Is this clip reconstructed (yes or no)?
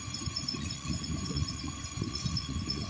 yes